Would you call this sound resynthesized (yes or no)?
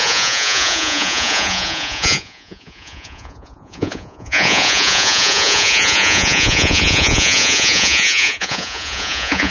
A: yes